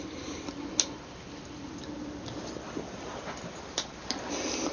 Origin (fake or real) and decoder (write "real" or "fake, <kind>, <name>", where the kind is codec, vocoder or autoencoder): real